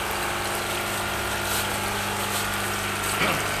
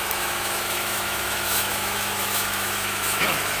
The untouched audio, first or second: first